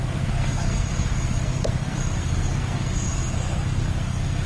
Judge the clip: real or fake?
fake